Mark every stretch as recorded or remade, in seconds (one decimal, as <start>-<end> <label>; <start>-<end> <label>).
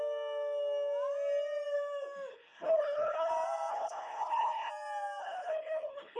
0.0-2.3 recorded; 2.3-3.3 remade; 3.3-3.7 recorded; 3.7-4.7 remade; 4.7-5.2 recorded; 5.2-6.2 remade